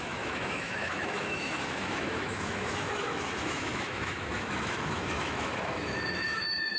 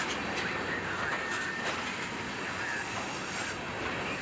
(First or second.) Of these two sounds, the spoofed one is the first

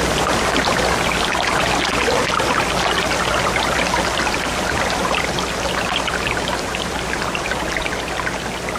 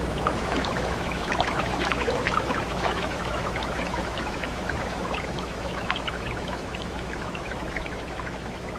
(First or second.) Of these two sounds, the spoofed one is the second